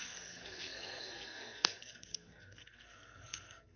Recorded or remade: remade